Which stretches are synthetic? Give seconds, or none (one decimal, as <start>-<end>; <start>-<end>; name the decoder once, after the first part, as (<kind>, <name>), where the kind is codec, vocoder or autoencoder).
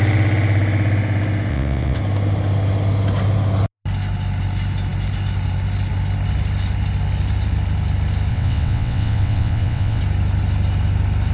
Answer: 1.5-2.0 (vocoder, WaveNeXt); 8.3-10.0